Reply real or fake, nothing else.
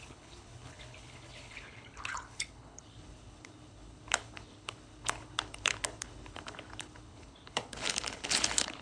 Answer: fake